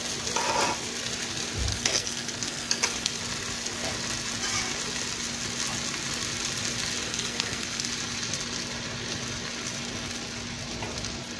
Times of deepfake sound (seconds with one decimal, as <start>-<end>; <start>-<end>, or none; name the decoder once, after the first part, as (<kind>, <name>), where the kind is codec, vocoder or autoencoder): 1.7-3.2 (codec, SNAC); 7.1-7.9